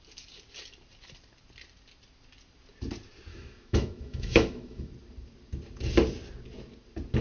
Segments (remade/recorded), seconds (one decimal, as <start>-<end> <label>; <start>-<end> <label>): 0.0-3.3 recorded; 3.3-4.9 remade; 4.9-7.2 recorded